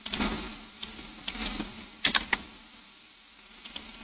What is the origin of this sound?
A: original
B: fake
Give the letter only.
A